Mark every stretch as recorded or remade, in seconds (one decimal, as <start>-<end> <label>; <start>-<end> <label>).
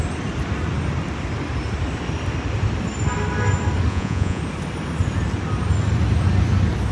0.0-3.9 recorded; 3.9-4.4 remade; 4.4-6.9 recorded